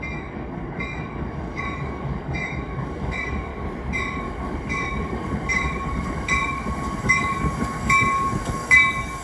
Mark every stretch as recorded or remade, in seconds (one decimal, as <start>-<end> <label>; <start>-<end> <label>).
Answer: 0.0-3.5 remade; 3.5-4.2 recorded; 4.2-9.2 remade